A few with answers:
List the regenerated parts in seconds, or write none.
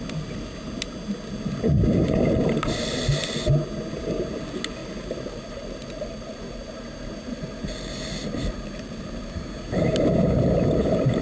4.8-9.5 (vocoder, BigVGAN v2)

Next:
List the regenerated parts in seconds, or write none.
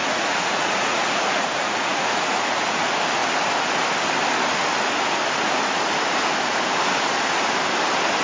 0.0-2.8 (vocoder, Vocos)